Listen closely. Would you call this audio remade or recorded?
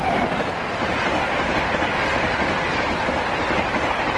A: recorded